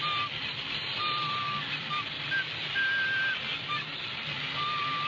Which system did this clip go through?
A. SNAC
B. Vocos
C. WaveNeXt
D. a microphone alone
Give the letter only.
D